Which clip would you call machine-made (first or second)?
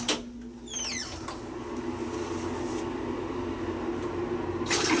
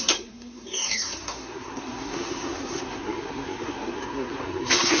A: second